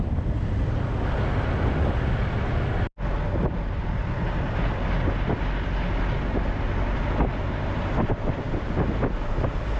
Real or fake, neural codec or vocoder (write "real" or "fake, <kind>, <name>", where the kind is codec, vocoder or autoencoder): real